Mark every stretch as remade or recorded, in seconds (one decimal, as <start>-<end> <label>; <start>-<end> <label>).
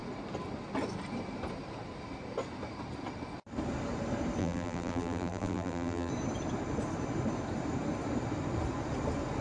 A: 0.0-4.4 recorded; 4.4-6.1 remade; 6.1-9.4 recorded